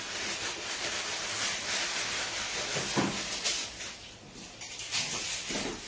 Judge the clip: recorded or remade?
recorded